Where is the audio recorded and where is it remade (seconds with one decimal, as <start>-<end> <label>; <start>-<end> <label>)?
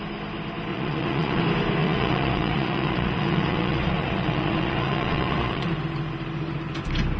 0.0-0.7 recorded; 0.7-1.4 remade; 1.4-1.8 recorded; 1.8-5.7 remade; 5.7-7.2 recorded